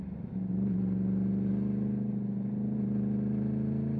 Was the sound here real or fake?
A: real